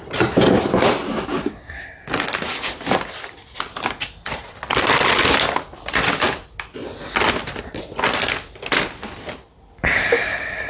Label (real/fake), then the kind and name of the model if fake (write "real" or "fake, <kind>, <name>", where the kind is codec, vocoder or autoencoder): real